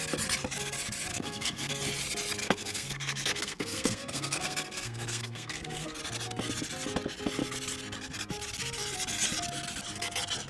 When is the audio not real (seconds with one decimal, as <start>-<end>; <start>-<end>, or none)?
1.1-1.7; 2.4-6.0